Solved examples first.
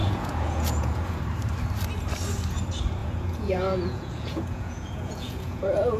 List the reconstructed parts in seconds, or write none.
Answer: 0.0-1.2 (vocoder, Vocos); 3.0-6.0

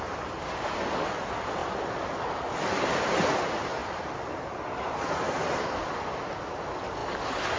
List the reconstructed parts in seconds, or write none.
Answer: none

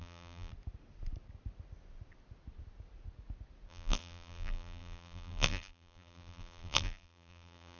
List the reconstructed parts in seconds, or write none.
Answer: 0.0-0.5 (vocoder, BigVGAN v2); 3.7-7.8

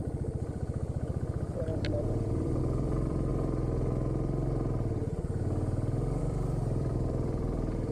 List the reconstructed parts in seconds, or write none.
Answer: 0.0-3.3 (vocoder, BigVGAN v2); 6.2-7.9

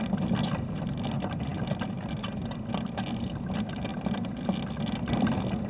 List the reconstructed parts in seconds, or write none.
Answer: none

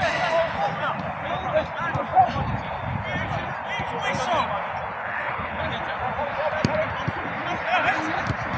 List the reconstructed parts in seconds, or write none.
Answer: 5.0-5.6 (codec, HILCodec)

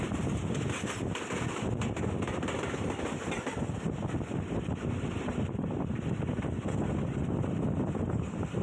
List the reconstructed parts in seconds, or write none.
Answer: none

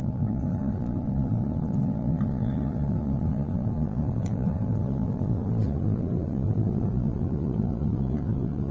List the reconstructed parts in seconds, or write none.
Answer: 0.0-8.7 (vocoder, Vocos)